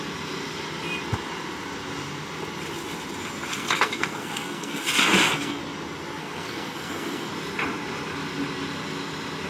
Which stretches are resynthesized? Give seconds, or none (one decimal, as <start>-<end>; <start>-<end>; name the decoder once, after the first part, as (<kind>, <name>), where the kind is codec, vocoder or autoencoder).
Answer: 3.5-5.6 (codec, SNAC); 6.2-7.3

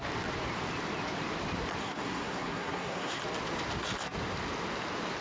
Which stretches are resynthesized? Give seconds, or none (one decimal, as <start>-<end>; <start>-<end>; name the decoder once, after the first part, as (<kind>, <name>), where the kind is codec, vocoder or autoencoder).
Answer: 1.8-3.2 (codec, SNAC)